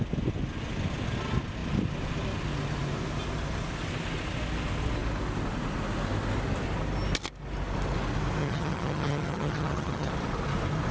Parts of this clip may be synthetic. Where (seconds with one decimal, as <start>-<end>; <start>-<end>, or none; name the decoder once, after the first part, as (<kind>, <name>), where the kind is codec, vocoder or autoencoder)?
8.4-10.1 (vocoder, HiFi-GAN)